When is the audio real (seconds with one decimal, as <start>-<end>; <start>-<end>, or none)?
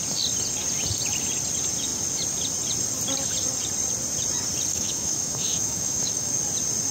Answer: 0.0-4.7; 6.3-6.9